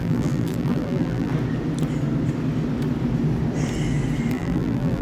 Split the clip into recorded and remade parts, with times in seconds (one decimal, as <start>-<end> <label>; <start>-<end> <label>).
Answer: 0.0-1.3 remade; 1.3-4.3 recorded; 4.3-5.0 remade